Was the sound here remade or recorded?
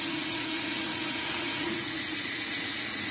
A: remade